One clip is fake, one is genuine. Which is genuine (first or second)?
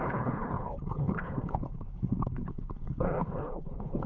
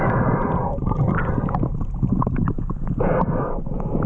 second